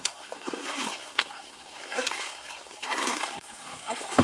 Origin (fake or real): fake